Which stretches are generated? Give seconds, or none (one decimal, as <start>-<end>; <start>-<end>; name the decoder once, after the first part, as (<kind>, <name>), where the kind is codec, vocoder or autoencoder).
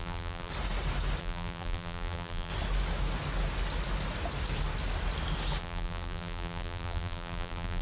0.0-0.5 (vocoder, BigVGAN v2); 1.2-2.5; 5.6-7.8